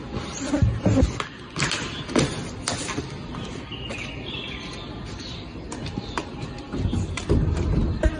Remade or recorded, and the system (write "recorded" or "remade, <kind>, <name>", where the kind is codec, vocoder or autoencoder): recorded